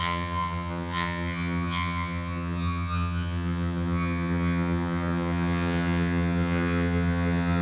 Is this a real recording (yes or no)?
no